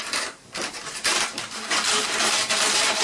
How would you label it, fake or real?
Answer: fake